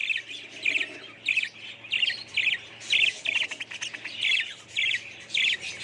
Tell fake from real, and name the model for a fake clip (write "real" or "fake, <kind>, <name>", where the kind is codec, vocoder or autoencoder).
real